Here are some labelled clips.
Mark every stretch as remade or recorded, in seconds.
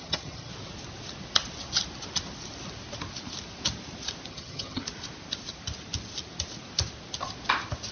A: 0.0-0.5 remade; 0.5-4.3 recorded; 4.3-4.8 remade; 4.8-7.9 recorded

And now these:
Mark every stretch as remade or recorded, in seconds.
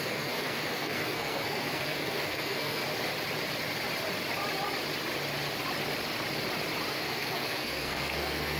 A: 0.0-2.8 remade; 2.8-6.9 recorded; 6.9-8.6 remade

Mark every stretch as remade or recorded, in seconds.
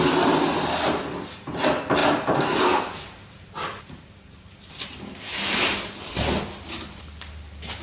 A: 0.0-2.0 recorded; 2.0-4.8 remade; 4.8-5.3 recorded; 5.3-6.4 remade; 6.4-7.8 recorded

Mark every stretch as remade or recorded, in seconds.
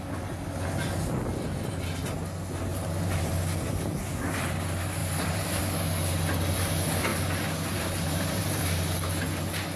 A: 0.0-2.7 recorded; 2.7-3.3 remade; 3.3-5.0 recorded; 5.0-5.6 remade; 5.6-7.1 recorded; 7.1-8.6 remade; 8.6-9.8 recorded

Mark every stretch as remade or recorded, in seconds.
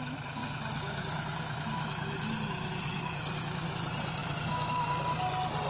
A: 0.0-0.4 recorded; 0.4-3.8 remade; 3.8-4.2 recorded; 4.2-4.8 remade; 4.8-5.7 recorded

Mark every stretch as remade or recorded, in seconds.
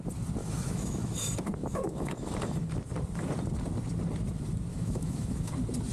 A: 0.0-0.4 recorded; 0.4-1.1 remade; 1.1-1.6 recorded; 1.6-2.7 remade; 2.7-4.7 recorded; 4.7-5.5 remade; 5.5-5.9 recorded